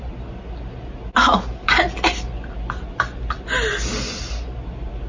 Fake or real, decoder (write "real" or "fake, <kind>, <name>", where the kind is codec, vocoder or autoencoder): real